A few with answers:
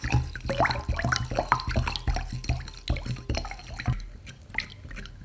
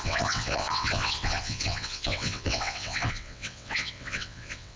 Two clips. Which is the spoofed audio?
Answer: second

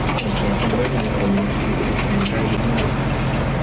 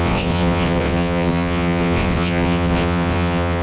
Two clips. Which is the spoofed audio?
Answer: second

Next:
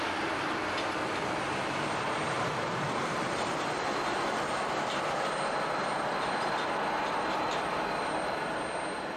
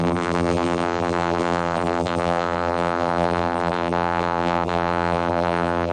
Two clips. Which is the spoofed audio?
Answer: second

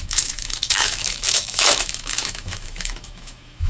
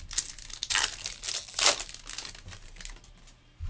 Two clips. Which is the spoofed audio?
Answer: first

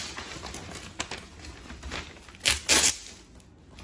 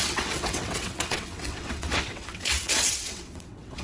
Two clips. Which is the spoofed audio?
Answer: second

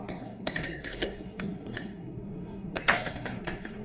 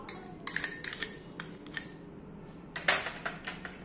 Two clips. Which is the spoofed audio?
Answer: first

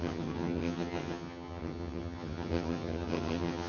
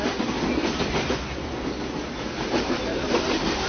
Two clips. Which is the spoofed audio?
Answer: first